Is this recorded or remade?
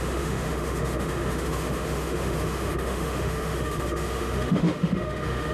remade